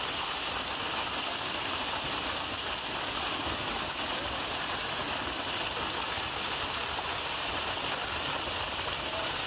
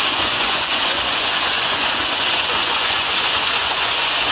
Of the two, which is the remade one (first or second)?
second